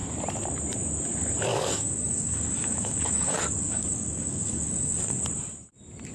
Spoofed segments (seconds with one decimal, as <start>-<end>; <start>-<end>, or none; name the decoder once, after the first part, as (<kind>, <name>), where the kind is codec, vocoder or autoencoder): 1.5-5.2 (codec, DAC)

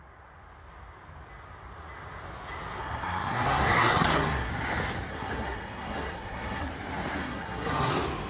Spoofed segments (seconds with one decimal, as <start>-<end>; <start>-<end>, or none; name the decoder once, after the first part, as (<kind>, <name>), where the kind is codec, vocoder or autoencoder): 2.8-4.5 (codec, SNAC); 5.1-6.7; 7.2-7.9